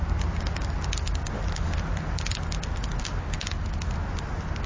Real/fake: real